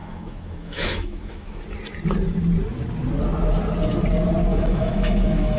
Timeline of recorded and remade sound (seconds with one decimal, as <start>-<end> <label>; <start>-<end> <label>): 0.0-1.6 remade; 1.6-4.5 recorded; 4.5-5.6 remade